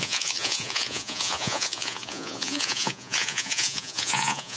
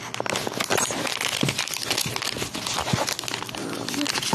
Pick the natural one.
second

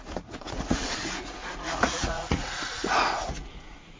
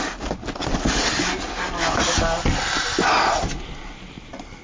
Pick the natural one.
second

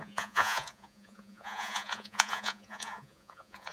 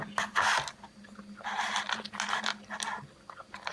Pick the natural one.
second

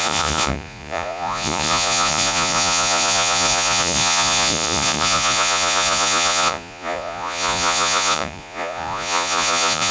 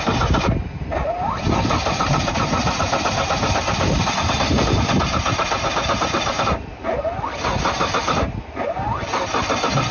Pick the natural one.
second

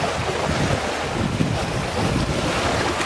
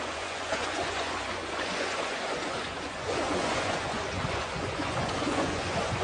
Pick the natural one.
first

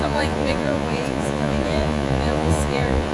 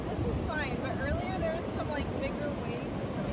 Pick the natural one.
second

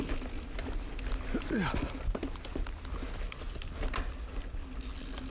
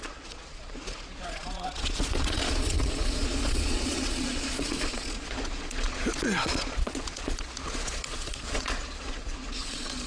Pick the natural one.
first